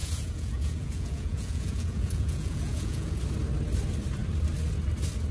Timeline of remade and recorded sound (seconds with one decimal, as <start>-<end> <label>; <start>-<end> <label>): 0.0-3.2 remade; 3.2-5.3 recorded